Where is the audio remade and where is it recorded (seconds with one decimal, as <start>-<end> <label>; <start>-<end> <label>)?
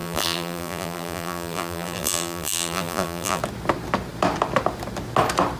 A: 0.0-3.4 remade; 3.4-5.6 recorded